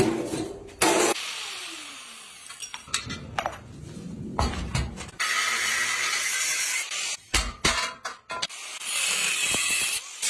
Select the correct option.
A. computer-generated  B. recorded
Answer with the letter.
B